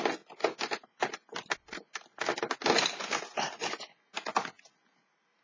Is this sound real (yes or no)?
yes